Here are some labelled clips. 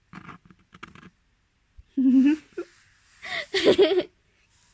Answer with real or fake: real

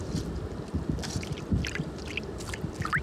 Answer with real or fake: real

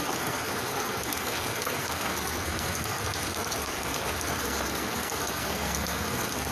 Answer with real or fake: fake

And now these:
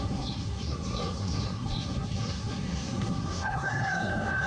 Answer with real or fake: fake